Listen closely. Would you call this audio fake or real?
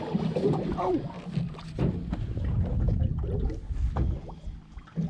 real